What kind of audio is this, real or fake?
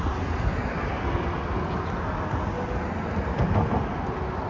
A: real